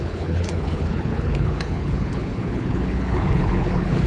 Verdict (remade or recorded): remade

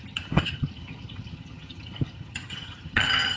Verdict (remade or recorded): remade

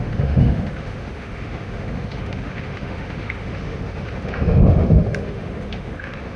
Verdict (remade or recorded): remade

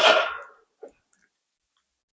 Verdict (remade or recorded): recorded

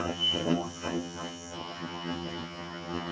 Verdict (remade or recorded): remade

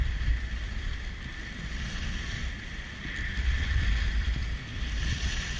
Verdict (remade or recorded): recorded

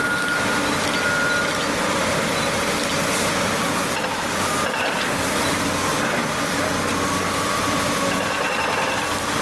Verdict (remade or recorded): recorded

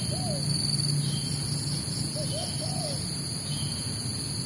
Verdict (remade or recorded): recorded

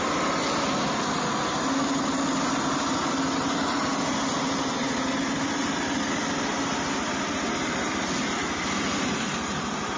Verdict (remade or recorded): recorded